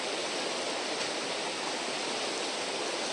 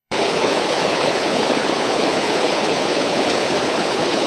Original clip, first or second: first